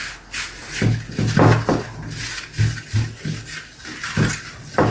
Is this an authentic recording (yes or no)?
yes